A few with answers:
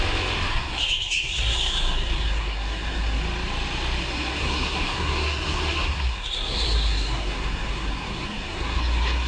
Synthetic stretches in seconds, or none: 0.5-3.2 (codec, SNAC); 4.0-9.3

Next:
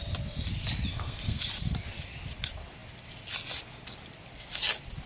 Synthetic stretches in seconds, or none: 0.9-1.4 (codec, SNAC)

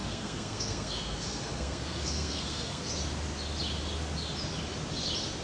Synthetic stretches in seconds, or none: 0.0-2.9 (codec, SNAC)

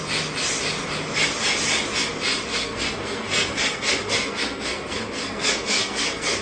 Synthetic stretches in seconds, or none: 2.5-6.4 (codec, SNAC)

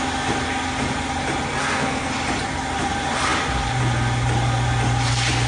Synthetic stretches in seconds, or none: 1.6-2.1 (codec, SNAC)

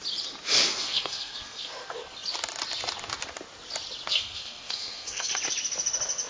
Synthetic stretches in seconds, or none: 0.7-1.7 (codec, SNAC); 4.1-5.3

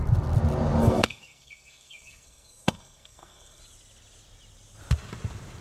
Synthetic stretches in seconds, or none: 0.8-3.6 (codec, SNAC)

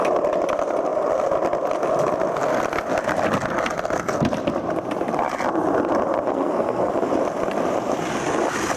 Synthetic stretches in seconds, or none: 6.3-6.9 (codec, SNAC)